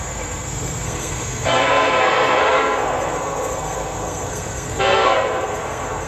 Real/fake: fake